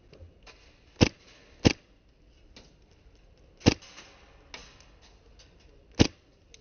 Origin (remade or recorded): recorded